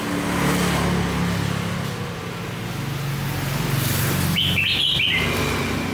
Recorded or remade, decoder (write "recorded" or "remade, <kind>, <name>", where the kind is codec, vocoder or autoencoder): recorded